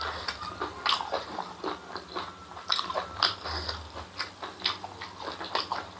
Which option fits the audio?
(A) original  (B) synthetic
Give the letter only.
A